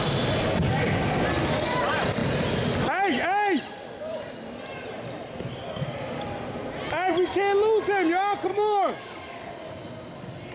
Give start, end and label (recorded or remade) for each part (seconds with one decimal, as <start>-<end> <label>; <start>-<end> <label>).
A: 0.0-8.5 recorded; 8.5-9.4 remade; 9.4-10.5 recorded